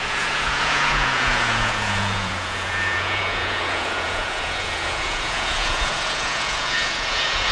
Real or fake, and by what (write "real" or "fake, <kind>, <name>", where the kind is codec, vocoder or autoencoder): fake, vocoder, Vocos